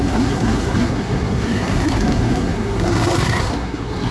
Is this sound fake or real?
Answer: fake